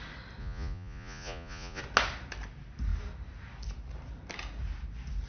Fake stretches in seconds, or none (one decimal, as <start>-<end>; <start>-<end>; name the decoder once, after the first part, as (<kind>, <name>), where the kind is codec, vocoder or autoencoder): 0.4-1.8 (vocoder, Vocos)